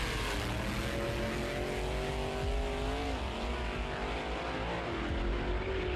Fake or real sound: real